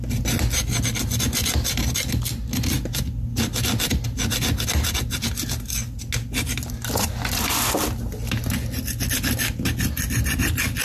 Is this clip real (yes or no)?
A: yes